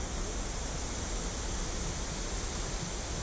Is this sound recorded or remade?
recorded